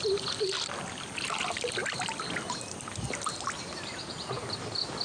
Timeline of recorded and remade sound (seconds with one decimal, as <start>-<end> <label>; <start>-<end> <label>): 0.0-5.0 recorded